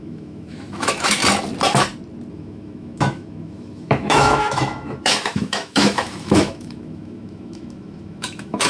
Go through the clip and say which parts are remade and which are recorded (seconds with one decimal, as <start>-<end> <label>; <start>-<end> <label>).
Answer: 0.0-1.2 remade; 1.2-2.3 recorded; 2.3-8.7 remade